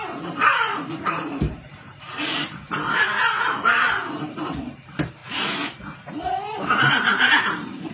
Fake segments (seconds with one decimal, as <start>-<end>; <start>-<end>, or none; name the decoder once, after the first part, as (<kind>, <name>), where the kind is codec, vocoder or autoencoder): 0.0-7.9 (vocoder, BigVGAN v2)